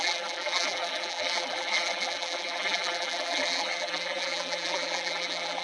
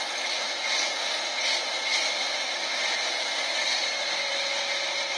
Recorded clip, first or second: second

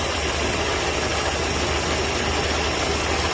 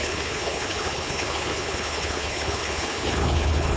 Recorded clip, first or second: first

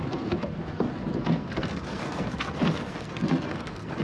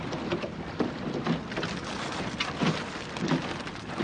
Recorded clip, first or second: second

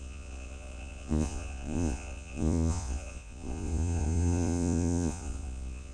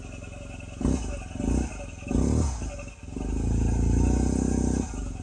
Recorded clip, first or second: second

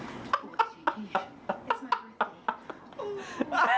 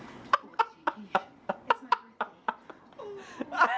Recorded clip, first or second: first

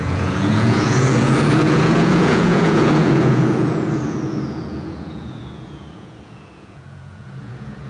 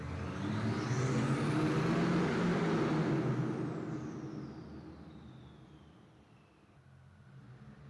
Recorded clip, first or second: second